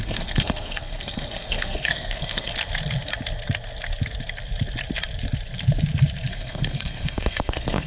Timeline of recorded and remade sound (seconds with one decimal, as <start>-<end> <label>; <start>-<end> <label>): 0.0-2.5 remade; 2.5-6.3 recorded; 6.3-7.9 remade